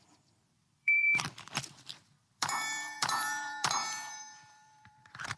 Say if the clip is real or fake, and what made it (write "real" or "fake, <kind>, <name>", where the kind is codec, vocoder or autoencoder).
fake, vocoder, BigVGAN v2